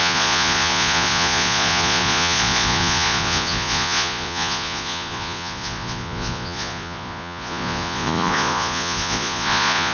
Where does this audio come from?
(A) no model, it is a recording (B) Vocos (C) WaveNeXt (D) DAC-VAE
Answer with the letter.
B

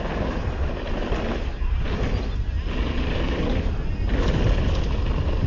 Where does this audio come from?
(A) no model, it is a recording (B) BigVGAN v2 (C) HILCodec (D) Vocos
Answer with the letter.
A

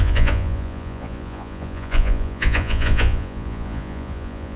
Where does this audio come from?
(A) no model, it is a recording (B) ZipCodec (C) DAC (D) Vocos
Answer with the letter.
D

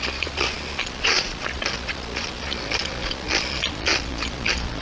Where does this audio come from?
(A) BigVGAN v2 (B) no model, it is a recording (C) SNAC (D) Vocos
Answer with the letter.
D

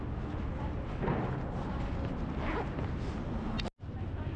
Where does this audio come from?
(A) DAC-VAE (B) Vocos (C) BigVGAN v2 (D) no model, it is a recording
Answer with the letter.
D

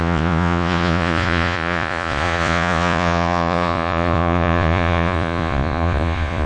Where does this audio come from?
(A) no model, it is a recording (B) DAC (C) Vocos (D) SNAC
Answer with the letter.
C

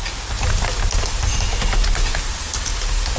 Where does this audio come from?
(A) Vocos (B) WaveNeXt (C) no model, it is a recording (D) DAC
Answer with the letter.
C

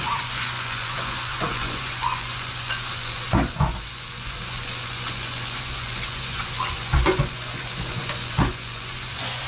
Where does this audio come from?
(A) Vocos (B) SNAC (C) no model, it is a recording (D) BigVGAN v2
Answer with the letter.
A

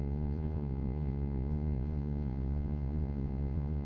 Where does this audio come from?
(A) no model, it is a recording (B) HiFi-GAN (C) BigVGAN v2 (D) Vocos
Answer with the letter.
D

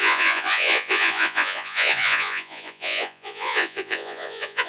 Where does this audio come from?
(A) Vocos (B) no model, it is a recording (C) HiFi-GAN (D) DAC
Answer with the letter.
A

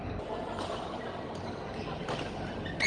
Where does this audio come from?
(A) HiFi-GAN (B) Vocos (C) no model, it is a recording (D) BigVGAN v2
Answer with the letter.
C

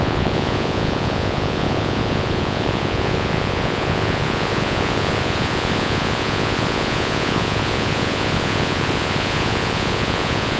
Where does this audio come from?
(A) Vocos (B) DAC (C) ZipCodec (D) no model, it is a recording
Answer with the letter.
A